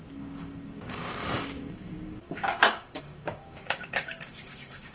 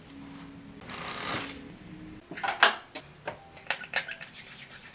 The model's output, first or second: first